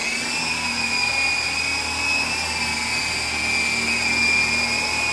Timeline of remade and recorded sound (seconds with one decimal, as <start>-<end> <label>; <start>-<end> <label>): 0.0-5.1 recorded